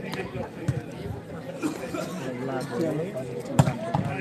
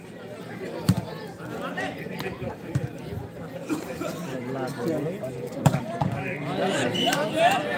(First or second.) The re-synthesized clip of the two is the second